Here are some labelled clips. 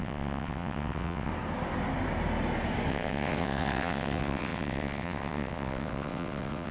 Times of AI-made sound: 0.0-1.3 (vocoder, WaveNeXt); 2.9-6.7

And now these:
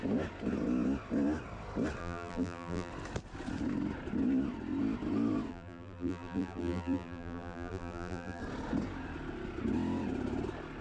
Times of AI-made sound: 2.0-2.9 (vocoder, BigVGAN v2); 5.5-8.4

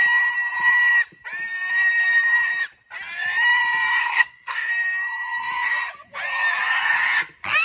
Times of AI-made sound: 4.0-4.7 (codec, SNAC)

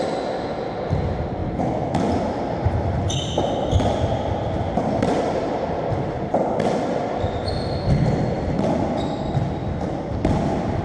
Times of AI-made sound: none

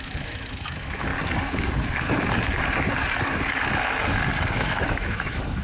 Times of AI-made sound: 0.0-1.1 (autoencoder, DAC-VAE); 4.5-5.6

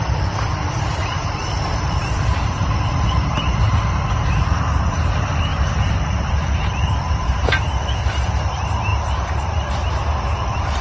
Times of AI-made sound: 0.0-3.7 (vocoder, BigVGAN v2); 4.5-10.8

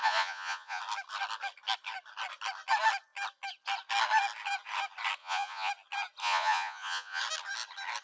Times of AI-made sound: 0.0-0.8 (vocoder, Vocos); 5.2-5.7; 6.2-7.2